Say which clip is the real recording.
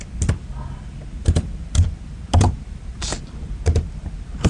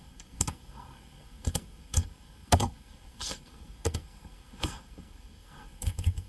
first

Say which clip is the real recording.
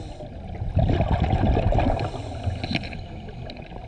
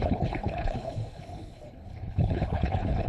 first